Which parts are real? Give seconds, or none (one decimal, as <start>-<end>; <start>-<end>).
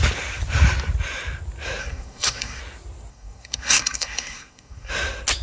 0.0-1.8; 2.6-3.1; 4.9-5.4